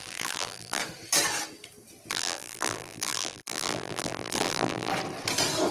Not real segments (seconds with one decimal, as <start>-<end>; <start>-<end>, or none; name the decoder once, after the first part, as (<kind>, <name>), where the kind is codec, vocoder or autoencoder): 0.0-0.8 (vocoder, BigVGAN v2); 2.1-4.9